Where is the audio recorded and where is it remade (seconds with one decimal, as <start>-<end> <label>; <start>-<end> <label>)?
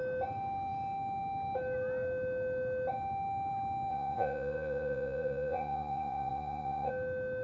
0.0-3.9 recorded; 3.9-6.9 remade; 6.9-7.4 recorded